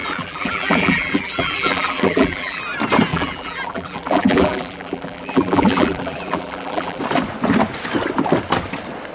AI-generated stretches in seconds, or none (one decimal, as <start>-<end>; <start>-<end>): 0.0-2.6; 3.1-7.0